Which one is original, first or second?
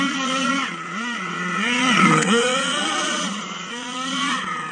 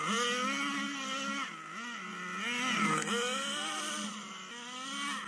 second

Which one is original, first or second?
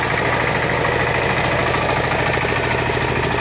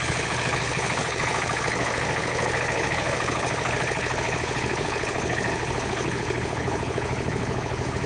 first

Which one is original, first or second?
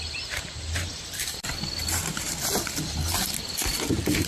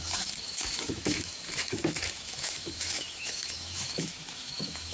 first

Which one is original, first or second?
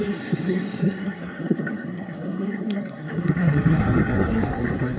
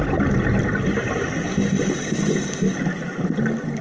second